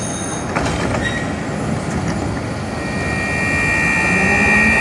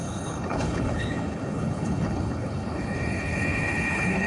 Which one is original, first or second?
first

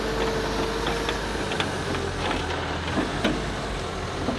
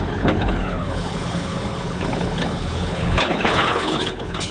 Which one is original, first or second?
first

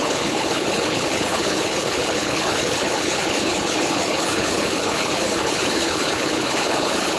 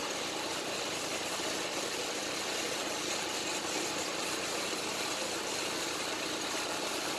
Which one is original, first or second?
second